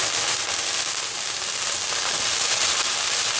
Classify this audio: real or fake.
real